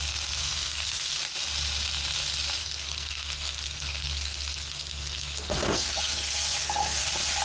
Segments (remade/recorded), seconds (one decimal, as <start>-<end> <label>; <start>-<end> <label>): 0.0-0.4 recorded; 0.4-1.2 remade; 1.2-2.6 recorded; 2.6-7.0 remade; 7.0-7.4 recorded